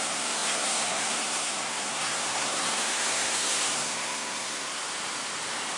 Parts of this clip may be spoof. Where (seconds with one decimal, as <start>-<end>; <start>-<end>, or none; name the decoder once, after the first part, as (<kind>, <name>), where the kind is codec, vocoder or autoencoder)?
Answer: 0.0-4.8 (codec, SNAC)